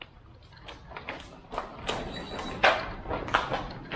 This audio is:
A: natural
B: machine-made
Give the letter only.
A